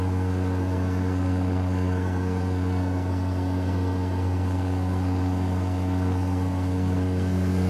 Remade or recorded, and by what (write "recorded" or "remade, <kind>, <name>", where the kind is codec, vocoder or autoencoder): remade, codec, SNAC